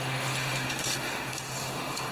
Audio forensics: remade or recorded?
remade